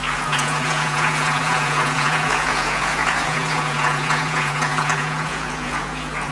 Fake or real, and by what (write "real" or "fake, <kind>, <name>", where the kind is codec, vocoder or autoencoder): fake, vocoder, Vocos